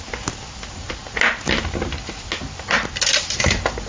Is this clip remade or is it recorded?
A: recorded